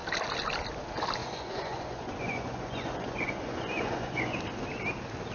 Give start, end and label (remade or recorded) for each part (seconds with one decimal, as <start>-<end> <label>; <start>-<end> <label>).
0.0-1.2 recorded; 1.2-4.4 remade; 4.4-5.3 recorded